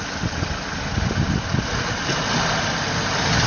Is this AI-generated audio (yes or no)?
no